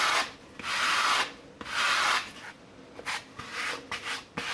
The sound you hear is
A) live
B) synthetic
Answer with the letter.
A